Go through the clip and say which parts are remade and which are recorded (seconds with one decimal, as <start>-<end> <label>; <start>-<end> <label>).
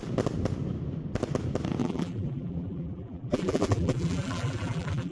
0.0-1.8 recorded; 1.8-5.1 remade